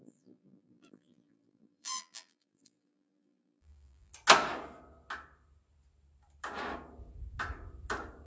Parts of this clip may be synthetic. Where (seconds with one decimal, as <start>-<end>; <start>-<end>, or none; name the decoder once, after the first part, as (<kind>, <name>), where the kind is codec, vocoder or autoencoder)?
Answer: 0.0-4.1 (vocoder, BigVGAN v2)